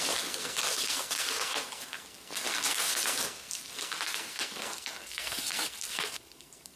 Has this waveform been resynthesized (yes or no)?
yes